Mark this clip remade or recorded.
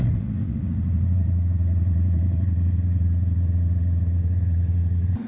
remade